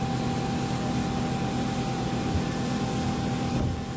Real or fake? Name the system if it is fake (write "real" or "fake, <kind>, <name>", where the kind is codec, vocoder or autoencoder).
real